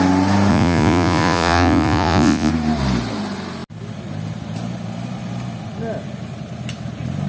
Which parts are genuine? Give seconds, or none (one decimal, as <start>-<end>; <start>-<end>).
0.0-0.5; 2.5-7.3